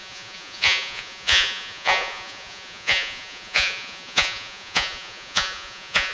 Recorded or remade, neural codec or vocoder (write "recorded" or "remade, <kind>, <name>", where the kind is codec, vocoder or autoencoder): remade, vocoder, Vocos